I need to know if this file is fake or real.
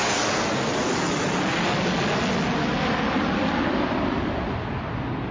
real